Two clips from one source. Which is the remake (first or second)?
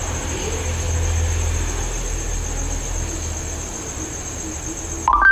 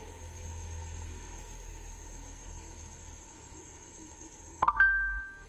second